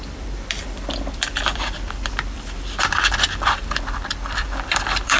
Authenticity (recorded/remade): remade